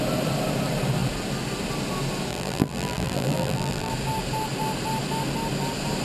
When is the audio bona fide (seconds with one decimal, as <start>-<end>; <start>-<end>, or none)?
0.0-2.3; 3.9-6.0